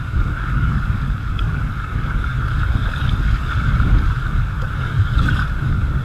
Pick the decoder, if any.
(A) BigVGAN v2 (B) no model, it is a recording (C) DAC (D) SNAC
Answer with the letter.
C